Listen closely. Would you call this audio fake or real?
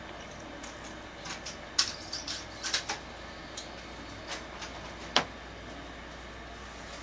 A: real